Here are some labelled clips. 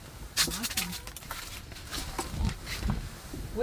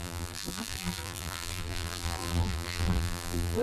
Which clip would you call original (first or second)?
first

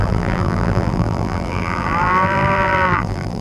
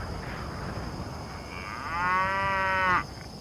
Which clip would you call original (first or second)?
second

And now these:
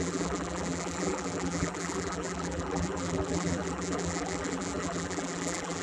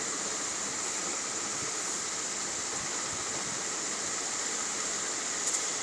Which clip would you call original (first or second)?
second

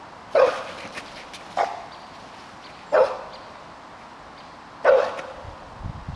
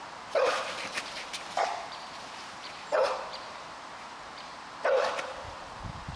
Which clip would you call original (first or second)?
first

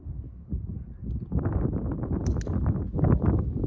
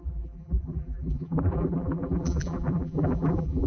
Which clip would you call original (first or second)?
first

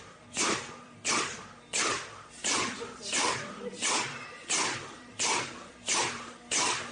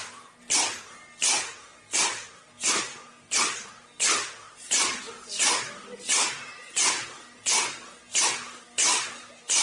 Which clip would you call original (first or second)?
second